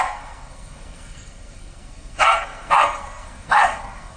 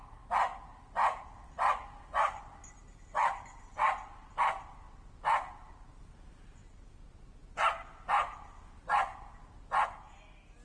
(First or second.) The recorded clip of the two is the second